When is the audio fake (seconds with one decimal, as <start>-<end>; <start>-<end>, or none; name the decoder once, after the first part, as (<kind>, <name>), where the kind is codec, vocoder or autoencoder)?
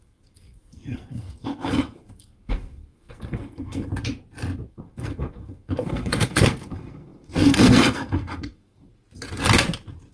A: 0.0-3.9 (codec, SNAC); 4.7-8.9